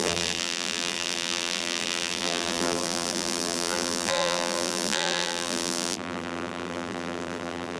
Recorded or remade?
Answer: remade